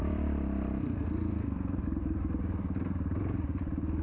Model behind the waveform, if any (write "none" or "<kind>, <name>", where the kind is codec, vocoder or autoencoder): vocoder, BigVGAN v2